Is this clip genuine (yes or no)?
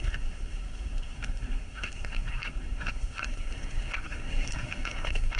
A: no